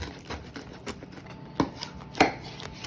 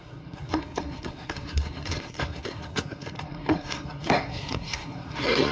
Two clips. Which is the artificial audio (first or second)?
second